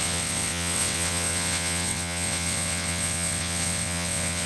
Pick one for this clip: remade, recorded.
remade